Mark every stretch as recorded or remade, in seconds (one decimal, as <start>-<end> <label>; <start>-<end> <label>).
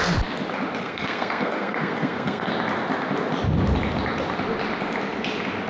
0.0-0.8 recorded; 0.8-2.5 remade; 2.5-5.7 recorded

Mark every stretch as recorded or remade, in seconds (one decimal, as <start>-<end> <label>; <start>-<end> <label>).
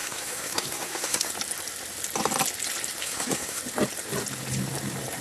0.0-1.3 remade; 1.3-3.0 recorded; 3.0-3.6 remade; 3.6-5.2 recorded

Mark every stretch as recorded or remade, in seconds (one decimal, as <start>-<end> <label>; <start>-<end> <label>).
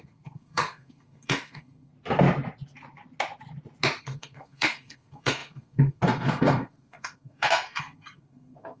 0.0-1.9 remade; 1.9-4.0 recorded; 4.0-8.8 remade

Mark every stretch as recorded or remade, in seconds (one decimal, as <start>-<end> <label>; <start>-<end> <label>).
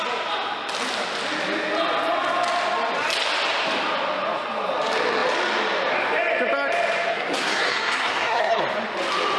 0.0-7.1 recorded; 7.1-8.6 remade; 8.6-9.4 recorded